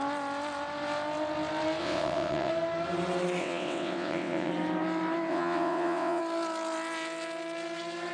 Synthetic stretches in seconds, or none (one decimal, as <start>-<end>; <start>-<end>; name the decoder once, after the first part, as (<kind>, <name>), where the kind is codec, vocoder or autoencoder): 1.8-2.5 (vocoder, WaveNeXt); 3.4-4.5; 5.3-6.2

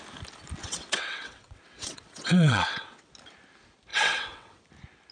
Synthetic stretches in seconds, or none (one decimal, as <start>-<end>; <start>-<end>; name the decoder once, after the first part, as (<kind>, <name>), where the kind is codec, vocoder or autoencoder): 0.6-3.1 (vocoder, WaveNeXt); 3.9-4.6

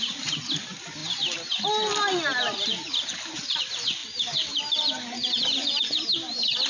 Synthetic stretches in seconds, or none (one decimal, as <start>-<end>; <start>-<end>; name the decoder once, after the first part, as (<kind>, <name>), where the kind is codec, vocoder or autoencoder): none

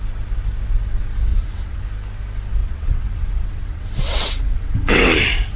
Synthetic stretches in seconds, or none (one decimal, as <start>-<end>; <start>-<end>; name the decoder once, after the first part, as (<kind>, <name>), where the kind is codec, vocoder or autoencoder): 1.3-1.8 (vocoder, WaveNeXt); 2.6-5.1

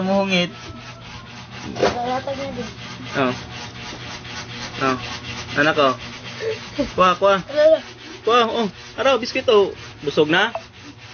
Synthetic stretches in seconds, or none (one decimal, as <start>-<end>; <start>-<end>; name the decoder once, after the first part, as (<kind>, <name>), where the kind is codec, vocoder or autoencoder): none

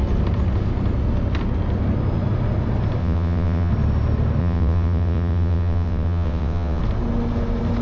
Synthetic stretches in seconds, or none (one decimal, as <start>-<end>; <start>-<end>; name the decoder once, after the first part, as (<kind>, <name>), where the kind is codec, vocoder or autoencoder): 3.0-3.7 (vocoder, WaveNeXt); 4.4-6.8

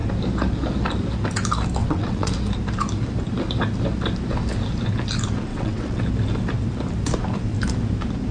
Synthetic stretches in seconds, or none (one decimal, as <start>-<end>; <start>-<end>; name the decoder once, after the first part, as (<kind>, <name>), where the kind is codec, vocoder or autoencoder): 1.8-2.3 (vocoder, WaveNeXt); 5.5-6.0

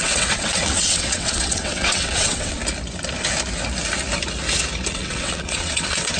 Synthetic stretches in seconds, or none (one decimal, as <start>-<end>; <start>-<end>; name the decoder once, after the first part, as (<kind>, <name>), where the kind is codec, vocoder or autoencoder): 0.0-2.6 (vocoder, WaveNeXt); 4.9-6.2